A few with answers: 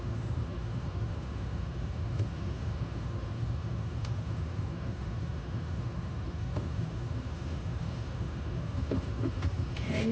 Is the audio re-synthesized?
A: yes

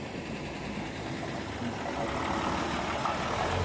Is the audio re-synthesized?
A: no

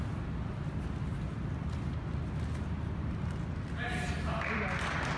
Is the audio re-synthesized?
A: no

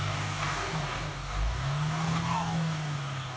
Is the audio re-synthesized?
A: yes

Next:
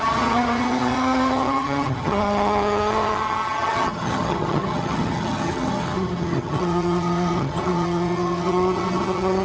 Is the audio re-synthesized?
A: yes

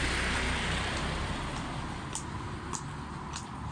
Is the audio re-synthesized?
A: no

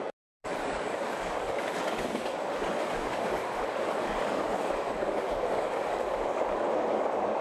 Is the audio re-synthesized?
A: yes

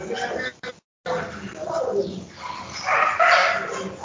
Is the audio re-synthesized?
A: no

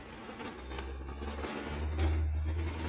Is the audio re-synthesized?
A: no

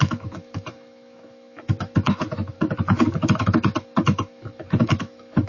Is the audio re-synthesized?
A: yes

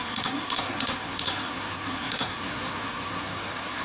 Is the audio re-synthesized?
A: yes